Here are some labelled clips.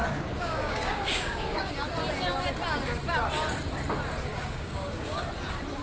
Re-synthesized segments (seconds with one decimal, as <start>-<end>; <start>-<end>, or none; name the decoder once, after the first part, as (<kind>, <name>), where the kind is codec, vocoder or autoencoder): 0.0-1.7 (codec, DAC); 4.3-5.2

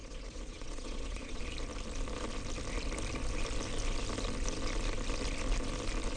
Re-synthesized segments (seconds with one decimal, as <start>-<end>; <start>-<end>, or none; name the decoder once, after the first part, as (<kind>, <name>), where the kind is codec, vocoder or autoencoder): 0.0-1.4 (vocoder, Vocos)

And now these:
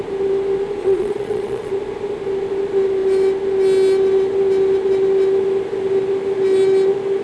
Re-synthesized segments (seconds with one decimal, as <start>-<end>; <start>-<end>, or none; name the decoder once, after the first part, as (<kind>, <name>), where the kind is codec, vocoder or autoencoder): 0.8-1.7 (vocoder, Vocos)

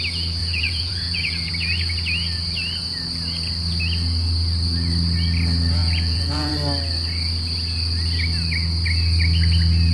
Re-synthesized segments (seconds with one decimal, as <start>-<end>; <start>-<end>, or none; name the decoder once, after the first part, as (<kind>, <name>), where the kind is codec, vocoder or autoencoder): 0.4-1.5 (vocoder, Vocos); 5.8-6.5